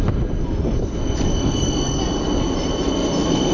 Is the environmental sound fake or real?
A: real